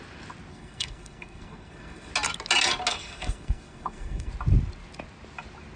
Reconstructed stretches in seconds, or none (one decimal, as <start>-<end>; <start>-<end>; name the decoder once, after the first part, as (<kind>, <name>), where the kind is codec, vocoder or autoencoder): 0.5-2.1 (codec, SNAC); 2.9-4.3